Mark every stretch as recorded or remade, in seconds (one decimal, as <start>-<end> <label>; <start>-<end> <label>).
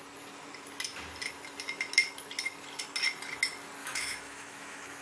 0.0-3.8 recorded; 3.8-5.0 remade